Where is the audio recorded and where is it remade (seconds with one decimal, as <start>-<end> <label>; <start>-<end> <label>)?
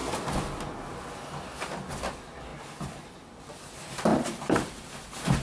0.0-0.7 remade; 0.7-2.5 recorded; 2.5-3.4 remade; 3.4-4.1 recorded; 4.1-4.7 remade; 4.7-5.4 recorded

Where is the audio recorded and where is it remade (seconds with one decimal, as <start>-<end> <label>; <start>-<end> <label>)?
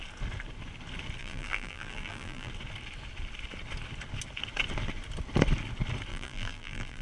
0.0-1.2 recorded; 1.2-2.5 remade; 2.5-6.1 recorded; 6.1-7.0 remade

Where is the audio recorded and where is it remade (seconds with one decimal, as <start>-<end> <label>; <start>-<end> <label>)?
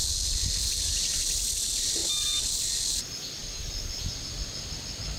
0.0-5.2 recorded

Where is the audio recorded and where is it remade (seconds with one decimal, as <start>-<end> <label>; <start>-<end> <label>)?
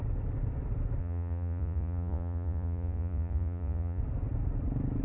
0.0-1.0 recorded; 1.0-4.0 remade; 4.0-5.0 recorded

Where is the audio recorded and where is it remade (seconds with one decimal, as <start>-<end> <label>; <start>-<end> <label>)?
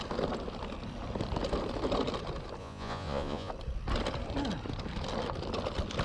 0.0-2.6 recorded; 2.6-3.5 remade; 3.5-6.0 recorded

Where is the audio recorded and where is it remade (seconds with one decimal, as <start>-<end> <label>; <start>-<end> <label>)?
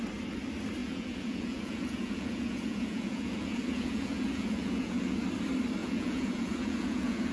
0.0-0.8 recorded; 0.8-5.2 remade; 5.2-5.8 recorded; 5.8-7.3 remade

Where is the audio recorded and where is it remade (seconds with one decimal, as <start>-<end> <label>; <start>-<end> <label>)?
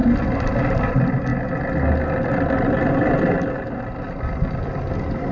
0.0-5.3 recorded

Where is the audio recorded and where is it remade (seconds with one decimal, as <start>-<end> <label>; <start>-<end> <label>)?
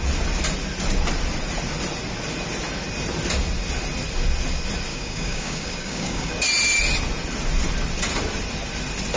0.0-4.9 recorded; 4.9-6.3 remade; 6.3-9.2 recorded